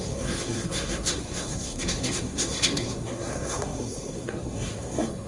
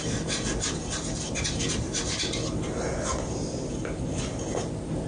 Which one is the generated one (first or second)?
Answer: first